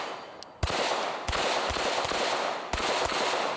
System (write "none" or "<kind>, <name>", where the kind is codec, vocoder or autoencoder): none